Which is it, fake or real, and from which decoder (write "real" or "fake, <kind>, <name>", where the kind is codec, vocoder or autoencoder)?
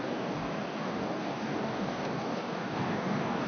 fake, codec, DAC